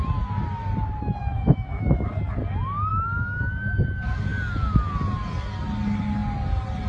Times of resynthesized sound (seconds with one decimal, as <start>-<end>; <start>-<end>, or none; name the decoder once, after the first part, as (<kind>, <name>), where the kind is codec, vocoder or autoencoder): 1.2-2.1 (autoencoder, DAC-VAE); 2.9-3.4